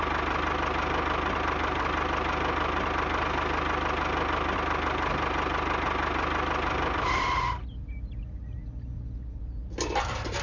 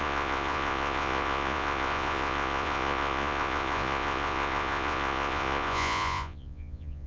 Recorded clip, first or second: first